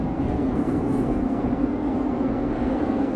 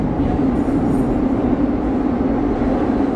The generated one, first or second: first